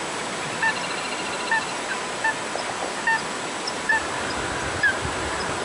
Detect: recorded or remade recorded